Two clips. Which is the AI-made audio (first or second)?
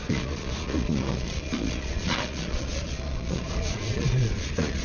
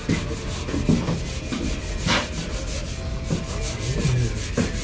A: first